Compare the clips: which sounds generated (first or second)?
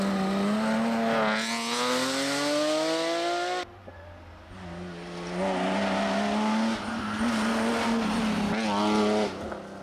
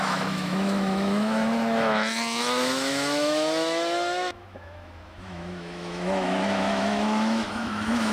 second